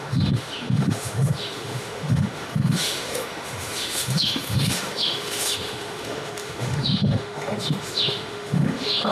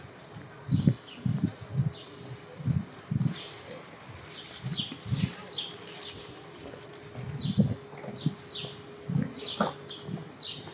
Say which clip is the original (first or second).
second